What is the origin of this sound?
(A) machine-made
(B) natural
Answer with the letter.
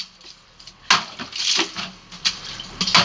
B